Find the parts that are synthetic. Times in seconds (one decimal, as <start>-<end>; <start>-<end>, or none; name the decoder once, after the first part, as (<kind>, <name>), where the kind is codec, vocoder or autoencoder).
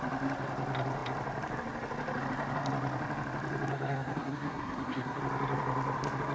3.7-5.2 (codec, SNAC)